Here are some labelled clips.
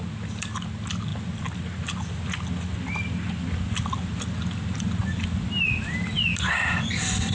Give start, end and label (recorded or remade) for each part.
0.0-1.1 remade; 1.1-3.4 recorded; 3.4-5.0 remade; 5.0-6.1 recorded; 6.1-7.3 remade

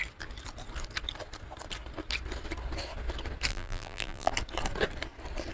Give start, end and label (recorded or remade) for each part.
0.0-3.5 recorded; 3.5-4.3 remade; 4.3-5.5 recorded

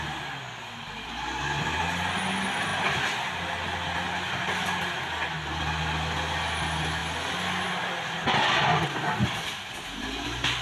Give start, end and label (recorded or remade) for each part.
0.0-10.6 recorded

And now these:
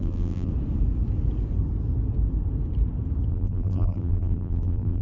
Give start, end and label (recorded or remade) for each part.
0.0-0.5 remade; 0.5-3.3 recorded; 3.3-5.0 remade

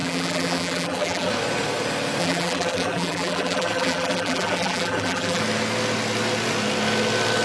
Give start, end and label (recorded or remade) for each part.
0.0-1.3 remade; 1.3-2.2 recorded; 2.2-5.4 remade; 5.4-7.4 recorded